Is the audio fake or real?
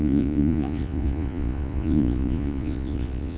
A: fake